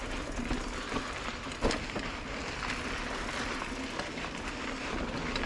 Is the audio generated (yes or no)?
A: no